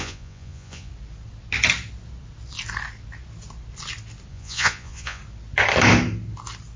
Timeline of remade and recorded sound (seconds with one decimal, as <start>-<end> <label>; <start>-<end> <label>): 0.0-0.9 remade; 0.9-4.3 recorded; 4.3-5.2 remade; 5.2-6.8 recorded

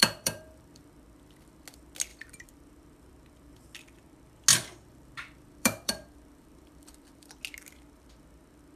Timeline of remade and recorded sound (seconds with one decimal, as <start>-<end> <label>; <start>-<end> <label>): 0.0-0.9 remade; 0.9-2.1 recorded; 2.1-2.7 remade; 2.7-4.5 recorded; 4.5-7.4 remade; 7.4-8.8 recorded

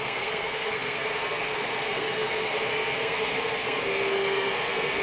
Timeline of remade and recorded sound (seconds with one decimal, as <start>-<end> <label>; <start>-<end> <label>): 0.0-5.0 remade

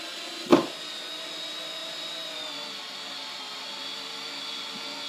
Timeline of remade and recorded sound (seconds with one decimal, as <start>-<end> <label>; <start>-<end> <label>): 0.0-0.5 recorded; 0.5-1.1 remade; 1.1-1.8 recorded; 1.8-5.1 remade

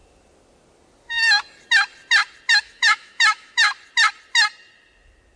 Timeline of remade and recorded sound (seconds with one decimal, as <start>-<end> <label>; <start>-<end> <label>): 0.0-2.6 recorded; 2.6-3.7 remade; 3.7-5.4 recorded

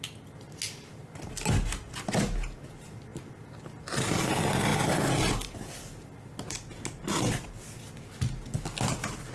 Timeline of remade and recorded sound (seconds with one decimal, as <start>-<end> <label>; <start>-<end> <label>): 0.0-9.3 recorded